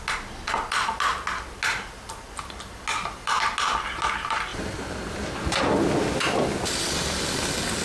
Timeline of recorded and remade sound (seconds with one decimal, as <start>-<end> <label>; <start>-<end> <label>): 0.0-2.9 recorded; 2.9-3.4 remade; 3.4-4.5 recorded; 4.5-5.1 remade; 5.1-7.8 recorded